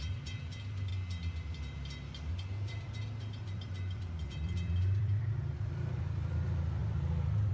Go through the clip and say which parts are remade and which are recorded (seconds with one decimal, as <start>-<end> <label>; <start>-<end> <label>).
0.0-0.9 remade; 0.9-2.3 recorded; 2.3-6.8 remade; 6.8-7.5 recorded